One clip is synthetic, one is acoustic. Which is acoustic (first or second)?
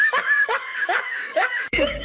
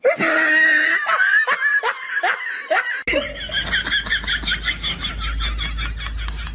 second